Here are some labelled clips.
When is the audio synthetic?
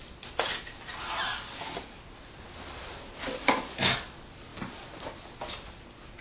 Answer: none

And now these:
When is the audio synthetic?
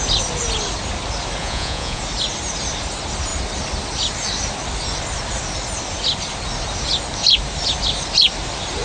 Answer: 1.4-2.0 (vocoder, Vocos)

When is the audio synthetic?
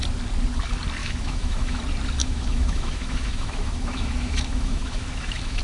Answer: 1.0-1.8 (autoencoder, DAC-VAE); 2.2-5.6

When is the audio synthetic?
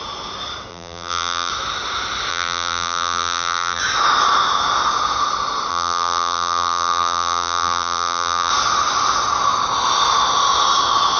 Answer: 0.7-1.5 (vocoder, BigVGAN v2); 2.3-3.8; 5.7-8.5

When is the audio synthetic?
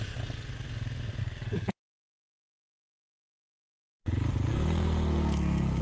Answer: 1.2-2.7 (codec, SNAC); 4.5-5.8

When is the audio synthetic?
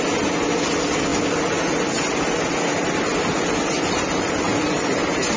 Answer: none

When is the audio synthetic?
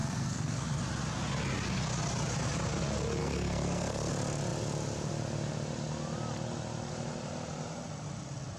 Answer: 0.0-0.8 (codec, SNAC); 3.2-4.1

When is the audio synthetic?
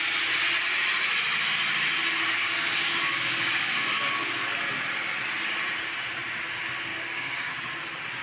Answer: 2.4-4.1 (codec, DAC); 6.9-7.5